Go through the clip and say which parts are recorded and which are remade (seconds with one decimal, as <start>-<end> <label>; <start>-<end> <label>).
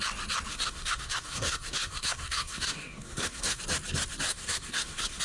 0.0-0.5 recorded; 0.5-3.6 remade; 3.6-4.3 recorded; 4.3-5.2 remade